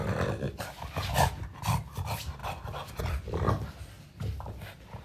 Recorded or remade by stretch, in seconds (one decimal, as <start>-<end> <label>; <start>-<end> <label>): 0.0-5.0 recorded